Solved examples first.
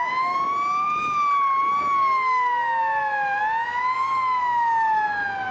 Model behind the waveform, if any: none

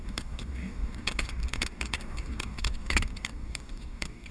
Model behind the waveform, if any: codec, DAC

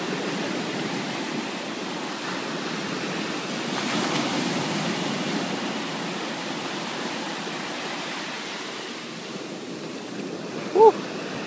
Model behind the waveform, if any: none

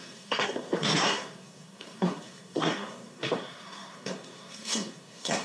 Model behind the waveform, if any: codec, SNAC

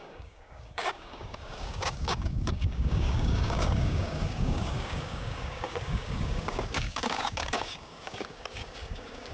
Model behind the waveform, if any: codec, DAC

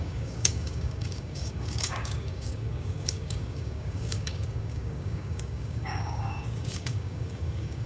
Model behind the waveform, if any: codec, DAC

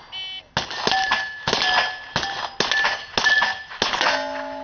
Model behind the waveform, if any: none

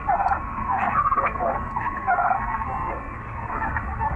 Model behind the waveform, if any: codec, SNAC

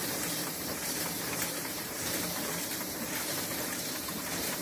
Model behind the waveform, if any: vocoder, BigVGAN v2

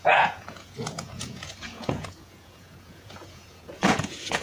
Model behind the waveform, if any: vocoder, Vocos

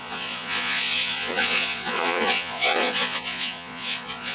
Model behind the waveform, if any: vocoder, Vocos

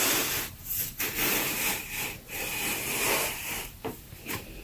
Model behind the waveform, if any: vocoder, BigVGAN v2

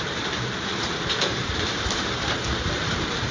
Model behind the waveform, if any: vocoder, BigVGAN v2